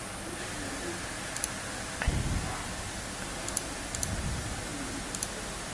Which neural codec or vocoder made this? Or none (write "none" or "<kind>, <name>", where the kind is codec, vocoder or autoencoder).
none